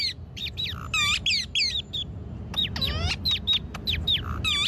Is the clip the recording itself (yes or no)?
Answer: yes